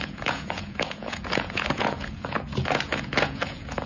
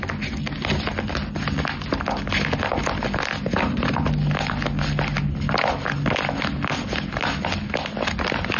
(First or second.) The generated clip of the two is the first